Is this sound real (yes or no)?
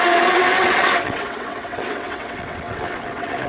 no